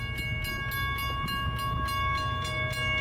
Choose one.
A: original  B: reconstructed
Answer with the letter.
A